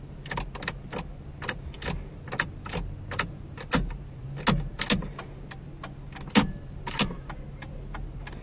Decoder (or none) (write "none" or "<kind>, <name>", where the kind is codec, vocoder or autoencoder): none